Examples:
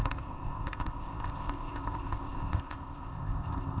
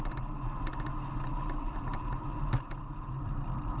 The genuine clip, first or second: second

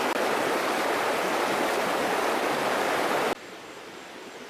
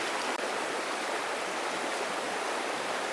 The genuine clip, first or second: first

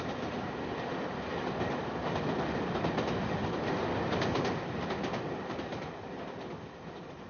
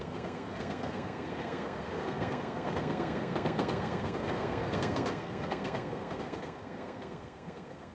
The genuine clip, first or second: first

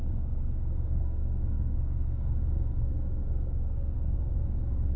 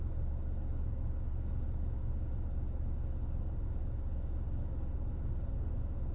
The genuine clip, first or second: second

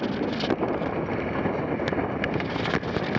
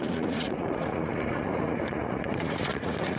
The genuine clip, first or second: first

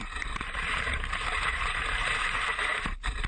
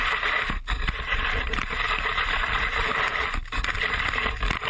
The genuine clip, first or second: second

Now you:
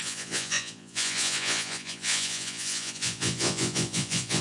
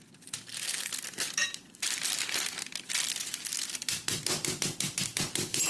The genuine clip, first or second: second